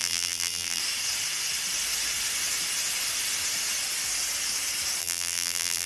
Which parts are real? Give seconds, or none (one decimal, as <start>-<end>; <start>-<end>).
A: 0.8-5.0